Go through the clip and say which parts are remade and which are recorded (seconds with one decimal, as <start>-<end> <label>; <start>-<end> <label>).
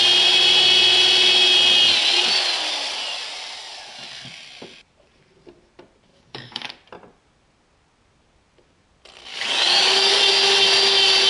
0.0-6.1 recorded; 6.1-6.7 remade; 6.7-9.3 recorded; 9.3-10.2 remade; 10.2-11.3 recorded